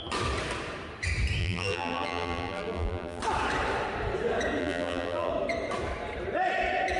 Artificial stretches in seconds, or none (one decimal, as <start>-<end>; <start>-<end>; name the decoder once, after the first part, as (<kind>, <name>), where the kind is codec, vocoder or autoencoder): 1.4-3.2 (vocoder, BigVGAN v2); 4.6-5.3